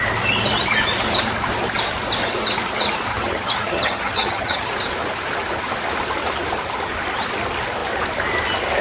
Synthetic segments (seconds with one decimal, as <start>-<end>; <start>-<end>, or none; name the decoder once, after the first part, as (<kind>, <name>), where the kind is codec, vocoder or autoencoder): 3.1-4.7 (vocoder, HiFi-GAN)